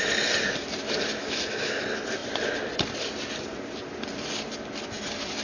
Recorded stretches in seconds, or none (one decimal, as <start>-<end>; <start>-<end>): 0.0-1.2; 1.8-5.4